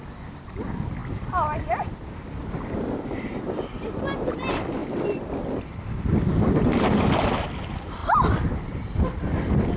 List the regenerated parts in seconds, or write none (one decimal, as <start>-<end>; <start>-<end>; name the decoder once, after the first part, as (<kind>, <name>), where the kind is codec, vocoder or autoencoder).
none